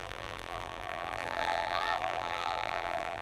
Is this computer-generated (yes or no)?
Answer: yes